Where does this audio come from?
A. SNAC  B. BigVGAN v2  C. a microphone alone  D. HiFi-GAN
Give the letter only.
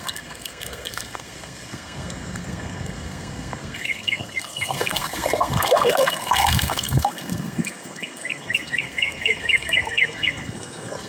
A